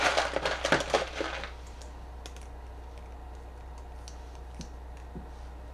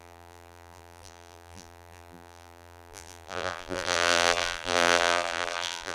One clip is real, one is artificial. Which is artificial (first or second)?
second